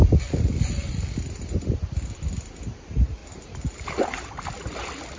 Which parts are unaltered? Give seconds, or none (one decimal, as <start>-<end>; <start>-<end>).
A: 0.0-5.2